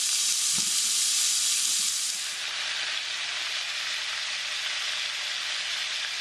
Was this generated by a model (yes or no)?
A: no